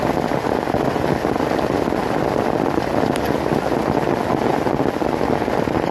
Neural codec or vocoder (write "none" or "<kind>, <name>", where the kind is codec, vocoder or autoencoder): none